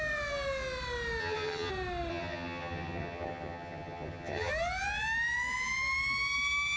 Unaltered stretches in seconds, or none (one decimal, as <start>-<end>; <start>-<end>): 0.0-1.2; 1.7-2.1; 4.5-6.8